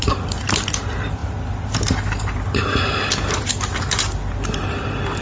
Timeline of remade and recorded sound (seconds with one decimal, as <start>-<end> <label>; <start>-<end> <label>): 0.0-1.2 remade; 1.2-3.5 recorded; 3.5-5.2 remade